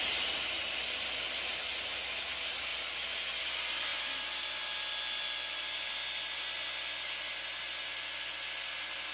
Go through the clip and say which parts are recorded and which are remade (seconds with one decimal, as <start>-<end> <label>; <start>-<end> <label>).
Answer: 0.0-9.1 recorded